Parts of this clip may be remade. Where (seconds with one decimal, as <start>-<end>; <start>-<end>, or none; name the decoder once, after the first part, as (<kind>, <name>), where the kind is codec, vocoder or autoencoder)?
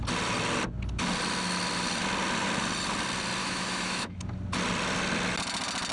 3.4-4.2 (autoencoder, DAC-VAE)